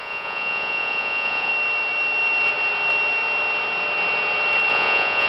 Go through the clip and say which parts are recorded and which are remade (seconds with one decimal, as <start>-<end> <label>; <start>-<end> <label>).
0.0-1.5 remade; 1.5-4.7 recorded; 4.7-5.3 remade